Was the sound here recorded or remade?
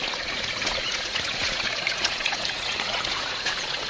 remade